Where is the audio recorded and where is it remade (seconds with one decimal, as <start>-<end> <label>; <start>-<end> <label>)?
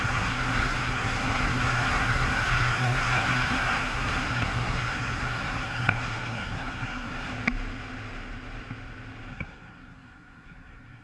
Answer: 0.0-7.3 remade; 7.3-9.3 recorded; 9.3-11.0 remade